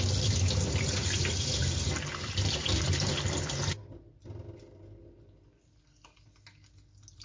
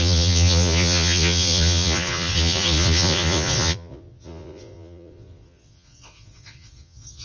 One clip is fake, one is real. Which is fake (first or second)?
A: second